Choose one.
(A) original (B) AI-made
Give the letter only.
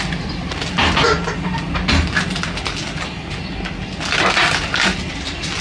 A